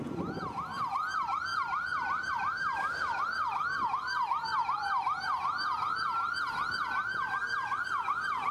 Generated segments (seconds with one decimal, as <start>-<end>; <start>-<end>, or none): none